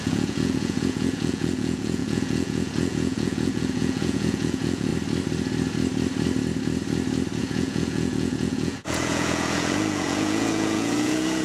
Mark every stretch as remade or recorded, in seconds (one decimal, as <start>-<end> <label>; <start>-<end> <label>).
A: 0.0-4.9 remade; 4.9-7.4 recorded; 7.4-11.4 remade